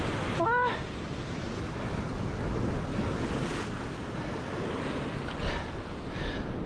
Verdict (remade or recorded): recorded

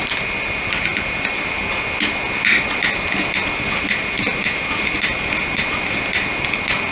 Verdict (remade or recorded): recorded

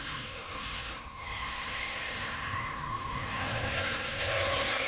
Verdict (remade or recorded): remade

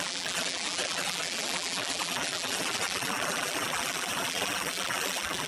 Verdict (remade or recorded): remade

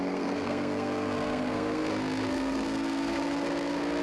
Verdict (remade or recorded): remade